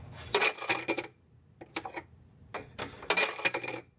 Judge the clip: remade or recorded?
recorded